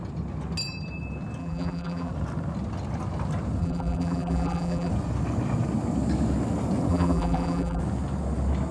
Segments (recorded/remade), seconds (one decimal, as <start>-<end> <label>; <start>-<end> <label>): 0.0-1.4 recorded; 1.4-2.1 remade; 2.1-3.6 recorded; 3.6-4.9 remade; 4.9-6.9 recorded; 6.9-7.8 remade; 7.8-8.7 recorded